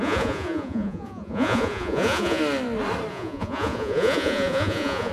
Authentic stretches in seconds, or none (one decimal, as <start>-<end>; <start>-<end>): 2.4-3.1